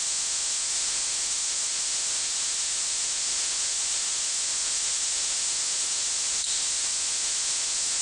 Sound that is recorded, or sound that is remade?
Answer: remade